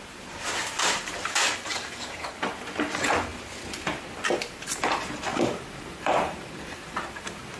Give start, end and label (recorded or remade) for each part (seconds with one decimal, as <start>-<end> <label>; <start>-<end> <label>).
0.0-0.6 recorded; 0.6-2.3 remade; 2.3-5.3 recorded; 5.3-7.0 remade; 7.0-7.6 recorded